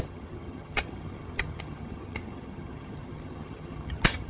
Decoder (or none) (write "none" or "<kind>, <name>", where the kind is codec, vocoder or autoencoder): vocoder, HiFi-GAN